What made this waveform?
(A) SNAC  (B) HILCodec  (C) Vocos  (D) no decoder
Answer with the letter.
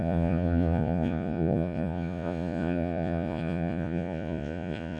C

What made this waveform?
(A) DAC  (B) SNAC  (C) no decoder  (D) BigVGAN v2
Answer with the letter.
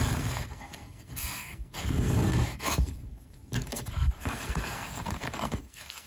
B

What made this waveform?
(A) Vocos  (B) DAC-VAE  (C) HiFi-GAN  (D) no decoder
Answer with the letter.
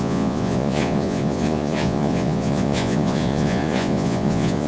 A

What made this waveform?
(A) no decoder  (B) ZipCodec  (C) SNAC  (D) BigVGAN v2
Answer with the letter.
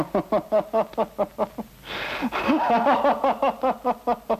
A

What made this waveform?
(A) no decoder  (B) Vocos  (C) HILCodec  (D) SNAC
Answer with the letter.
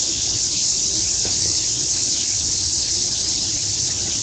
C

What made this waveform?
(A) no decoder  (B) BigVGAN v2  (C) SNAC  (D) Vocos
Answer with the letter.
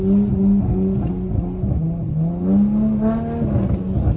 A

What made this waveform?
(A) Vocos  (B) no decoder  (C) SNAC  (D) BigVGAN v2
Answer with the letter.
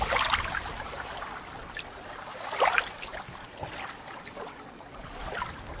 B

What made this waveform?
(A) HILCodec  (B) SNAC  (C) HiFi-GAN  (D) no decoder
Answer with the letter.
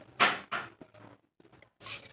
D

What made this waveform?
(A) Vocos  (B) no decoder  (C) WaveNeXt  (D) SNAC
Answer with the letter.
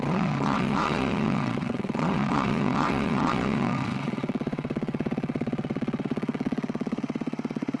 C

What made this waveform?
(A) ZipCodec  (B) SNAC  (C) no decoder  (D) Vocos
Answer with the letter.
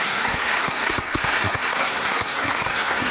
B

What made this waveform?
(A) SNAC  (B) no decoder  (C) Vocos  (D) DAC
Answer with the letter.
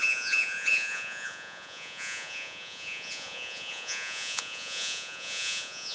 C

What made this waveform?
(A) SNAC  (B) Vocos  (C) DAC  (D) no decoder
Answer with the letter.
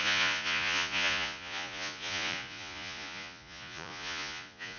B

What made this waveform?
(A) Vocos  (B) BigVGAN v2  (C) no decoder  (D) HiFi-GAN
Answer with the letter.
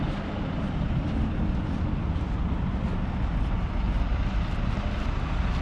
C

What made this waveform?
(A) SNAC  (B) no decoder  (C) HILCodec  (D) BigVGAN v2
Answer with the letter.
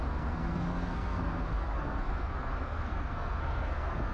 A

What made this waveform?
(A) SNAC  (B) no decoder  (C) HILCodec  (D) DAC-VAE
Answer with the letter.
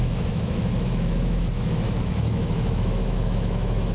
D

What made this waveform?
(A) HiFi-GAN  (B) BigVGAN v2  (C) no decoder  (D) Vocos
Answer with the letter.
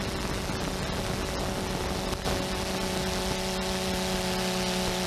C